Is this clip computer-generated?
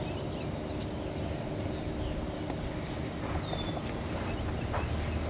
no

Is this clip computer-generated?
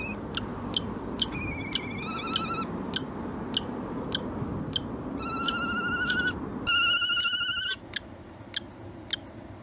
no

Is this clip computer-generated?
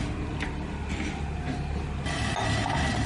no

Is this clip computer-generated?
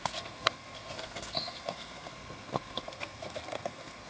yes